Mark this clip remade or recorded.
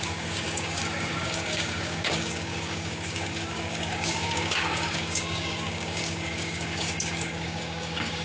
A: remade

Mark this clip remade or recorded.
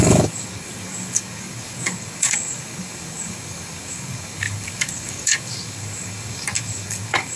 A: remade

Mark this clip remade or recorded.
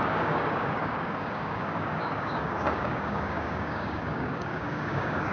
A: remade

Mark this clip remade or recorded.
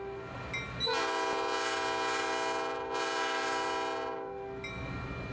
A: recorded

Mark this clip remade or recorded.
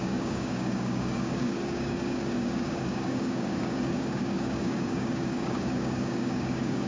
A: remade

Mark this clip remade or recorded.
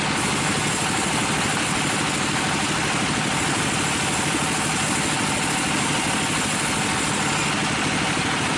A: recorded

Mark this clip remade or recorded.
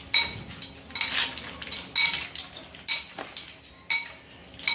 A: recorded